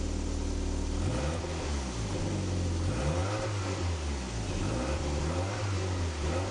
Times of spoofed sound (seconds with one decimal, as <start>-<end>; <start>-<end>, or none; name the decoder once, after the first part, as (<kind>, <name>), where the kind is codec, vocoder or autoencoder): none